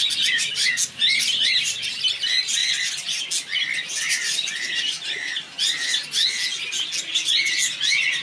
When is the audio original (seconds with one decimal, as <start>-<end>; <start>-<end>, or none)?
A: 0.0-8.2